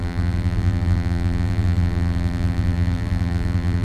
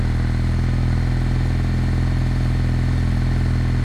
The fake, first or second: first